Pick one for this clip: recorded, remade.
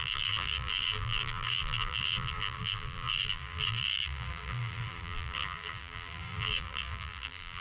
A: remade